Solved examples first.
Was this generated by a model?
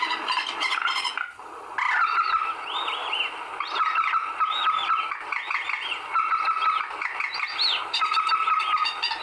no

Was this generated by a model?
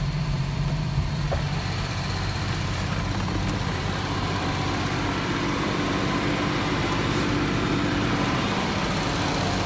yes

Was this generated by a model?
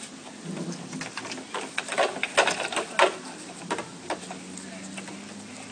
no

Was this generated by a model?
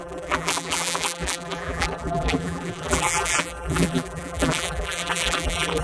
yes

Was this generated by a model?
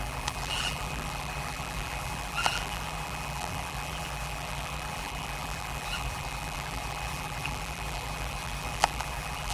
yes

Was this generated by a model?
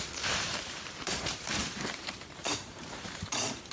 yes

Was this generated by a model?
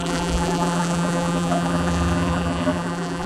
yes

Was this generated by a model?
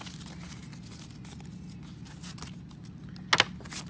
no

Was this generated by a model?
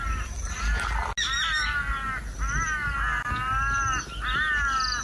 no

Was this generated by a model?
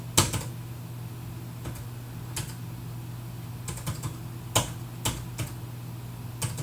no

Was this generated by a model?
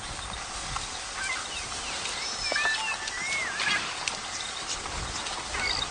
no